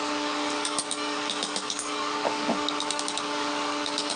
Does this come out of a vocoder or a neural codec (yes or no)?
yes